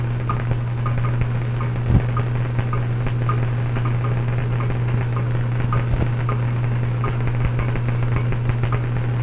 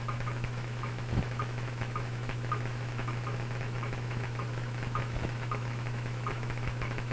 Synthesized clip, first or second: second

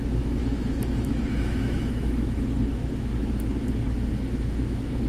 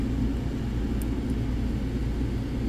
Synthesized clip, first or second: first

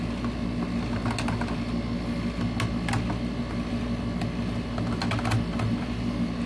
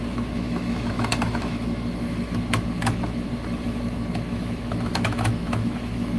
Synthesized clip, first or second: second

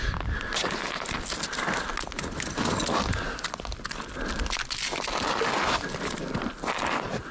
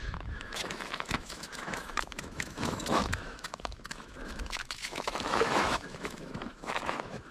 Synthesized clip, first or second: second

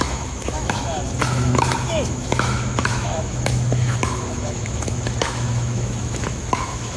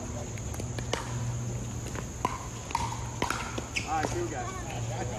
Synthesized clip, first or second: first